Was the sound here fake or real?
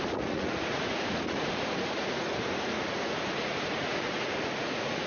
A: fake